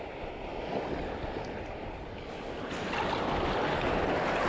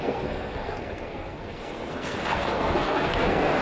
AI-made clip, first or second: second